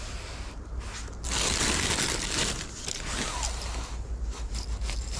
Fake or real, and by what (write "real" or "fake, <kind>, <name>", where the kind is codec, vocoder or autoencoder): real